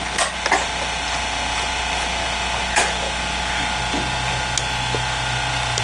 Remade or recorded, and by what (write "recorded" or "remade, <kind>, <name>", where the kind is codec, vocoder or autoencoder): recorded